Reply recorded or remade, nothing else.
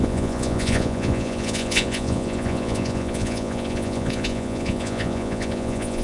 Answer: remade